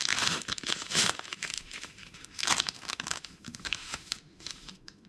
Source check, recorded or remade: remade